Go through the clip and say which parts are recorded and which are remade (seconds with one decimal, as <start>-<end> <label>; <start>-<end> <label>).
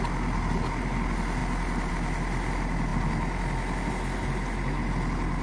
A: 0.0-5.4 recorded